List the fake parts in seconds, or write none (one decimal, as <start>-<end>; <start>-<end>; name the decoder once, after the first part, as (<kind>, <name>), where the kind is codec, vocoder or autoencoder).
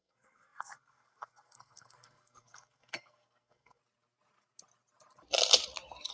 0.0-3.8 (codec, SNAC)